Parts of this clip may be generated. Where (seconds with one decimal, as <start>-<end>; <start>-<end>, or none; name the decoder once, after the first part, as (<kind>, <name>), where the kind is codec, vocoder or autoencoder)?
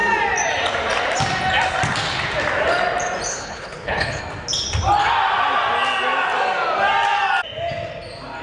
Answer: 3.3-4.2 (codec, HILCodec)